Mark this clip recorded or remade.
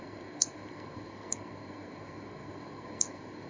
remade